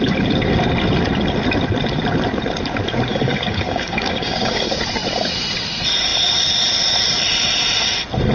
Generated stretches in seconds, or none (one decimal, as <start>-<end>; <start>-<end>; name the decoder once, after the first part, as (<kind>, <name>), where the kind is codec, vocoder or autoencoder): 3.1-4.7 (codec, DAC)